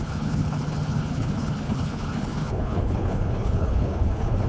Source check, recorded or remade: remade